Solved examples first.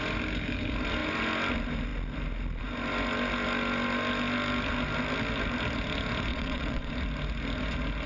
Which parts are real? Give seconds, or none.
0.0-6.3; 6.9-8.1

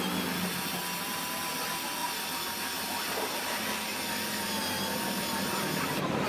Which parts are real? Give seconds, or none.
0.0-6.3

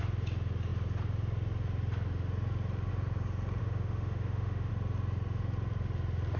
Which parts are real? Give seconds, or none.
0.0-3.6; 4.7-6.4

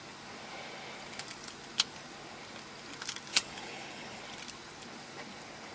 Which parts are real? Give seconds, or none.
0.0-3.3; 4.2-5.7

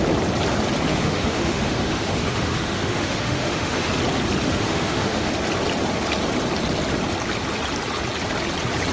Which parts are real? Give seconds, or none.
0.0-0.9; 3.9-4.4; 5.3-8.9

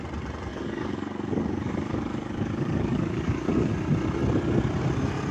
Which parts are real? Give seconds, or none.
0.0-0.5; 3.7-5.3

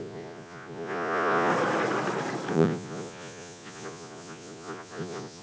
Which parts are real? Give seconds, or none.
1.5-2.5

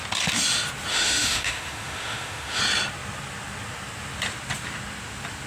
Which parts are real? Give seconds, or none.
0.0-0.9; 2.6-5.5